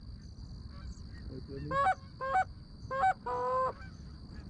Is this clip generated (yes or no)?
no